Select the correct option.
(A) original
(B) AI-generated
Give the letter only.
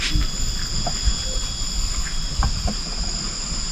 A